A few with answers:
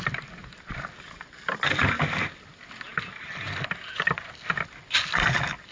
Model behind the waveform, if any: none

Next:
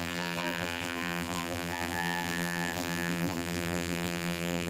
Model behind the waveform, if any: vocoder, BigVGAN v2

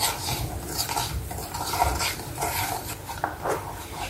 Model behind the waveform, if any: none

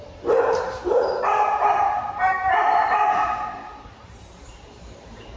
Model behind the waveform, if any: vocoder, BigVGAN v2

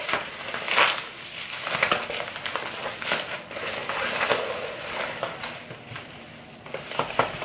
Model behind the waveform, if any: none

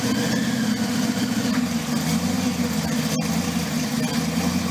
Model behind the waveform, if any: none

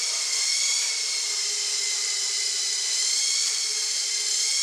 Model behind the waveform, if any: vocoder, BigVGAN v2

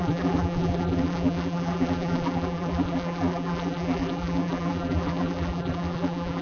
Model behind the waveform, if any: vocoder, BigVGAN v2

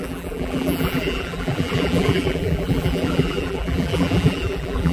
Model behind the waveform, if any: vocoder, BigVGAN v2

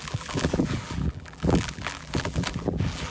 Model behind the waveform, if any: vocoder, BigVGAN v2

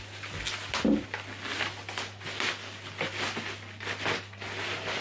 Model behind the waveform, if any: none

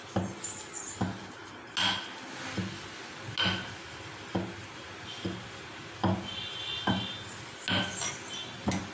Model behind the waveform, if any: none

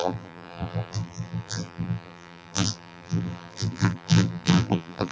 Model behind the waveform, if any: vocoder, BigVGAN v2